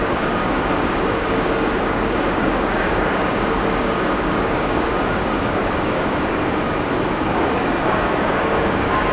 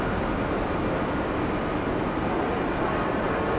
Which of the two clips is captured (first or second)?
second